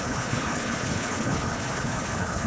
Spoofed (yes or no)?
yes